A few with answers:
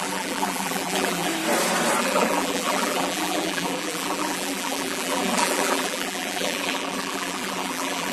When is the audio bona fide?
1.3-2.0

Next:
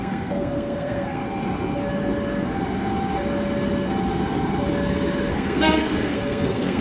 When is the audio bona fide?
1.2-5.3